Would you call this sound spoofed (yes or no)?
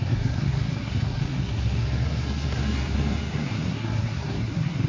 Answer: yes